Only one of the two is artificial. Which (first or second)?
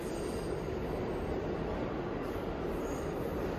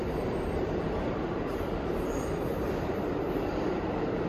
second